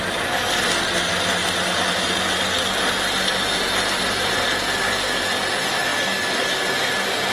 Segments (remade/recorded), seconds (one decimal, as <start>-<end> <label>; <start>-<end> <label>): 0.0-7.3 recorded

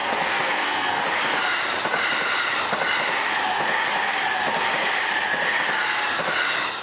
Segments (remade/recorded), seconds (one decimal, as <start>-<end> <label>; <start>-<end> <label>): 0.0-1.0 remade; 1.0-6.8 recorded

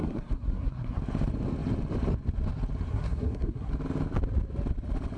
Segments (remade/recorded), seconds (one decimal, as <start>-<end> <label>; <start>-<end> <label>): 0.0-1.0 remade; 1.0-2.9 recorded; 2.9-3.7 remade; 3.7-5.2 recorded

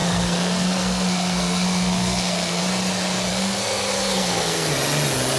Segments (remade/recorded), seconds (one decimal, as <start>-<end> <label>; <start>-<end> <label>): 0.0-2.6 remade; 2.6-3.3 recorded; 3.3-4.7 remade; 4.7-5.4 recorded